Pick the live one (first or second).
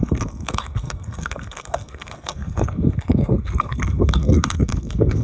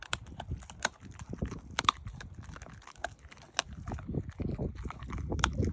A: second